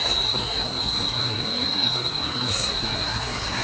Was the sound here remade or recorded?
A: remade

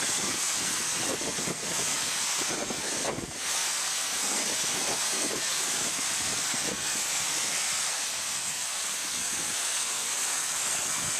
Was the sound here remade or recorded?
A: remade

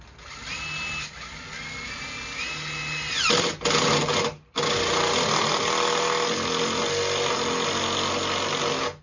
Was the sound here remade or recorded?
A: recorded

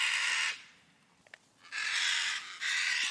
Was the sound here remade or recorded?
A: recorded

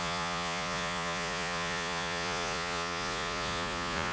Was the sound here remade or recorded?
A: remade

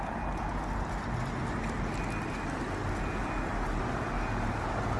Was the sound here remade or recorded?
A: recorded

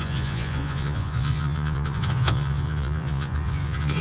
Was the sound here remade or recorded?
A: remade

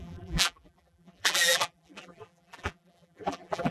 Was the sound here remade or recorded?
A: remade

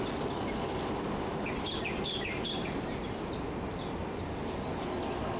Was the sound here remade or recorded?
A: recorded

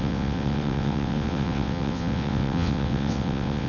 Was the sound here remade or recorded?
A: remade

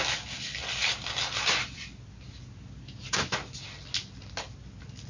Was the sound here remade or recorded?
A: recorded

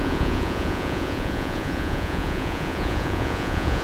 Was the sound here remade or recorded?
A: remade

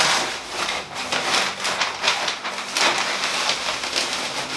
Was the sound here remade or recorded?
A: recorded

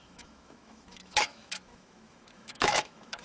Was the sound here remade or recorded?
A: remade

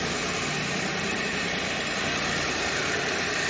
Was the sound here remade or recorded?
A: remade